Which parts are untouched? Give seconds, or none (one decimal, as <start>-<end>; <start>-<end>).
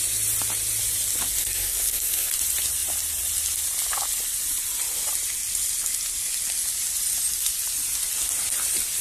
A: 0.0-1.4; 2.3-9.0